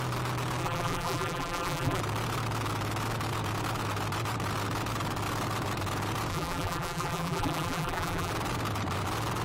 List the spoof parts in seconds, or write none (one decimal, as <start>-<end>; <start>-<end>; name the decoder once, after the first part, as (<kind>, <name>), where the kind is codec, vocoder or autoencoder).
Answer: 0.6-2.0 (vocoder, BigVGAN v2); 6.3-8.3